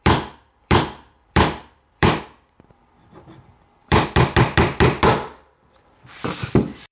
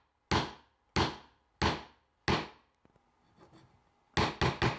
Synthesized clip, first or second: first